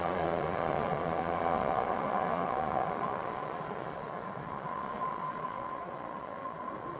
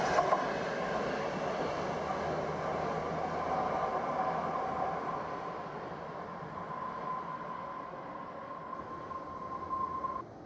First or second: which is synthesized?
first